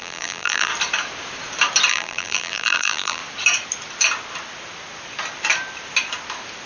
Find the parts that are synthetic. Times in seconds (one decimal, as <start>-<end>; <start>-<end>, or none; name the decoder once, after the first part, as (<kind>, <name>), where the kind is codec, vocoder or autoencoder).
0.0-0.7 (vocoder, BigVGAN v2); 1.9-3.2